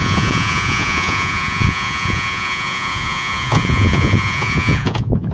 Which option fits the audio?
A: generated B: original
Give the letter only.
A